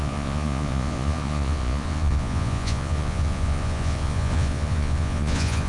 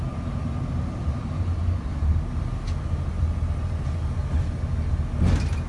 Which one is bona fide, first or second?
second